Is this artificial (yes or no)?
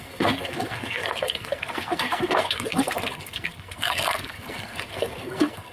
yes